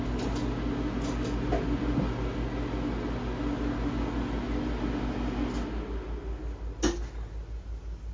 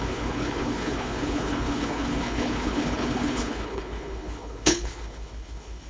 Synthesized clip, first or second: second